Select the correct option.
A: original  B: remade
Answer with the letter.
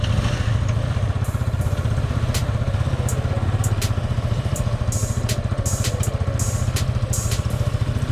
A